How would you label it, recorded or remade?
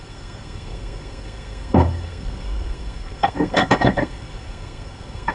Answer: remade